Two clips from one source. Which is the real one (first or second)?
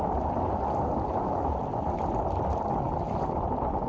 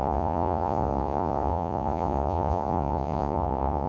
first